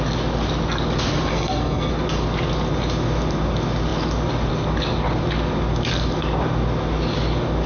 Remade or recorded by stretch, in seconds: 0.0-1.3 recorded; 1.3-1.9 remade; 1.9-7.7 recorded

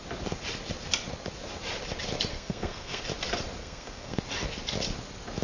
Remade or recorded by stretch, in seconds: 0.0-2.3 recorded; 2.3-3.0 remade; 3.0-3.6 recorded; 3.6-4.2 remade; 4.2-5.4 recorded